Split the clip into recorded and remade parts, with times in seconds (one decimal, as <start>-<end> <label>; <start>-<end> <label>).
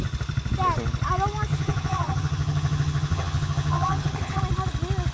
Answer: 0.0-1.5 recorded; 1.5-4.4 remade; 4.4-5.1 recorded